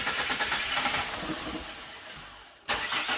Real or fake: real